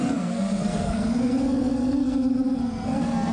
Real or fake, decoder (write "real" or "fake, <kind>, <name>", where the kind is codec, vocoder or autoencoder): fake, codec, SNAC